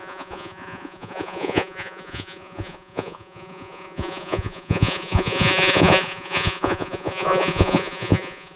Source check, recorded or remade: remade